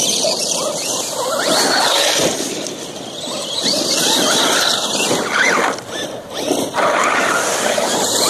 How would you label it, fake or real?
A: real